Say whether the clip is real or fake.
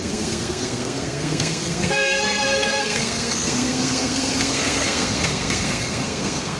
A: fake